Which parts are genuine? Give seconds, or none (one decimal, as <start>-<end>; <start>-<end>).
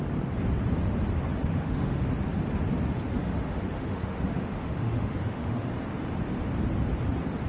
0.0-1.5; 2.1-3.1; 5.7-7.5